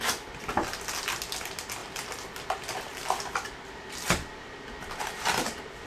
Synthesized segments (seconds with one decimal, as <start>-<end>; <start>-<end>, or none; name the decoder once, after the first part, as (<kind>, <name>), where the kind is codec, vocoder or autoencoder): none